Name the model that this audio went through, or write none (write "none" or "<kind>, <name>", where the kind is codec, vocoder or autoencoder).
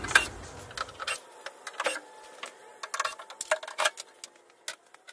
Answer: none